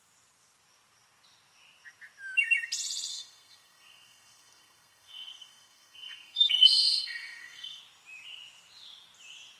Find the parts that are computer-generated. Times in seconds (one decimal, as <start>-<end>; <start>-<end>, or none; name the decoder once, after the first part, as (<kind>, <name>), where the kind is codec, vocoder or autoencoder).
3.1-7.8 (codec, SNAC)